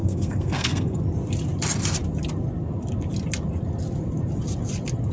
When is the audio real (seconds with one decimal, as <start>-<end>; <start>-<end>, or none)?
1.0-5.1